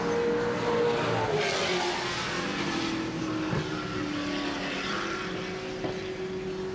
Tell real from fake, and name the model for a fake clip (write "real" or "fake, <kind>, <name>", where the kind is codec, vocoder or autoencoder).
real